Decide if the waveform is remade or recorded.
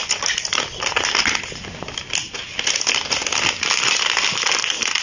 recorded